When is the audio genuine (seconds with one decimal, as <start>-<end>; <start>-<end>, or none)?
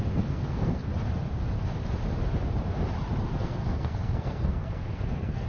0.9-3.3